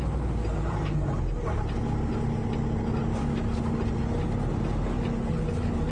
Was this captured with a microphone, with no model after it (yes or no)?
yes